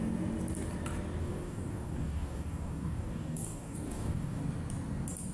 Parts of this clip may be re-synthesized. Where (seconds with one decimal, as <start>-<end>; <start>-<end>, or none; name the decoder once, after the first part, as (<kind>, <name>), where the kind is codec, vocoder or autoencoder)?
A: 1.2-4.4 (codec, DAC)